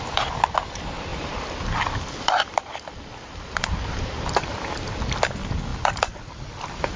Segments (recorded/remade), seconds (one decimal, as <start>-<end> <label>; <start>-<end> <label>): 0.0-1.1 recorded; 1.1-4.5 remade; 4.5-5.7 recorded; 5.7-6.2 remade; 6.2-7.0 recorded